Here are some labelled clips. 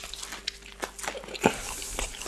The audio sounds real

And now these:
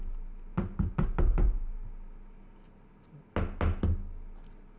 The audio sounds real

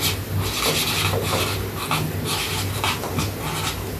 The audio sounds real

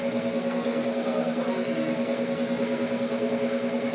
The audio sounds fake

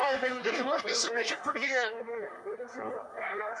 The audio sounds fake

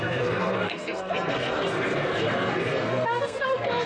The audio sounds fake